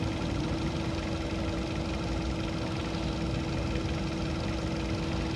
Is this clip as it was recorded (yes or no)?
yes